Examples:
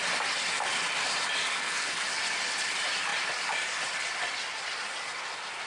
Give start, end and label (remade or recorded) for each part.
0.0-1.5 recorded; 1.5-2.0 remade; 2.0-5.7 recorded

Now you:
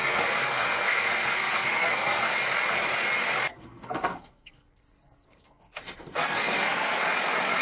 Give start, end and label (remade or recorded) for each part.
0.0-2.3 remade; 2.3-3.5 recorded; 3.5-6.9 remade; 6.9-7.6 recorded

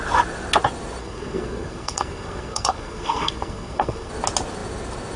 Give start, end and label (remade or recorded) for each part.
0.0-1.0 recorded; 1.0-4.1 remade; 4.1-5.2 recorded

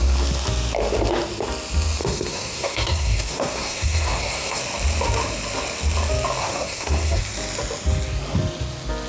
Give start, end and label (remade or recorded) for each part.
0.0-2.0 recorded; 2.0-4.6 remade; 4.6-6.4 recorded; 6.4-7.2 remade; 7.2-9.1 recorded

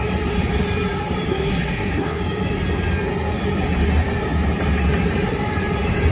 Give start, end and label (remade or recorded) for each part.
0.0-1.3 recorded; 1.3-2.2 remade; 2.2-6.1 recorded